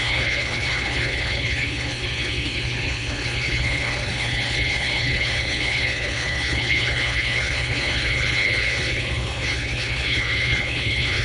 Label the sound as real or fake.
fake